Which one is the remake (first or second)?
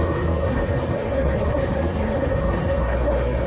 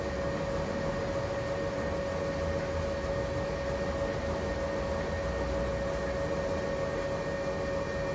first